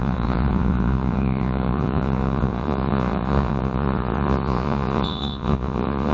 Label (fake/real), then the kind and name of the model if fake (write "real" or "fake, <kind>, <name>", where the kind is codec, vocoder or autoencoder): fake, vocoder, Vocos